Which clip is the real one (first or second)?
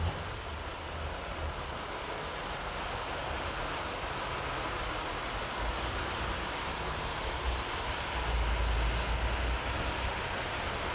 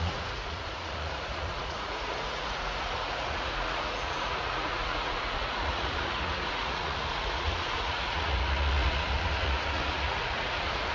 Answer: first